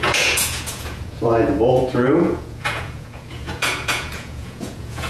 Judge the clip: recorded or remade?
remade